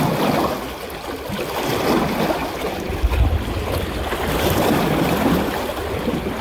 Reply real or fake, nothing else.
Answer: real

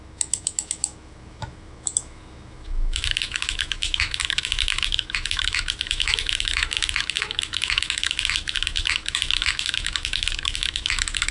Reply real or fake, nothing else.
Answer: fake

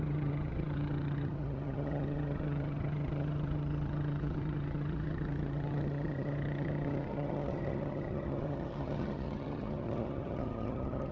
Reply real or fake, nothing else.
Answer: fake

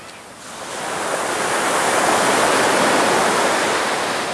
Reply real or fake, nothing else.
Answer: real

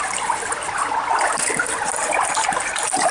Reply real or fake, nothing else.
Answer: real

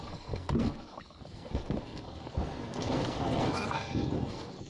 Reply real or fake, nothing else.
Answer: fake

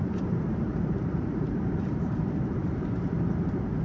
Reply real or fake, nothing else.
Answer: fake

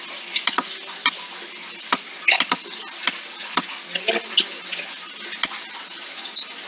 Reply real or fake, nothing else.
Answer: real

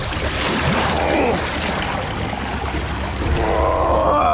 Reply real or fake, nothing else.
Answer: real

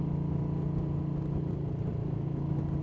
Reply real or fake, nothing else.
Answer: real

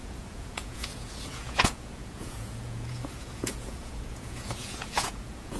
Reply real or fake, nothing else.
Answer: fake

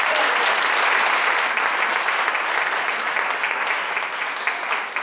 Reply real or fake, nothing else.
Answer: real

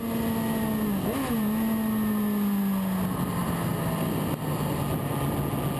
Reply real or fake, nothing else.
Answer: real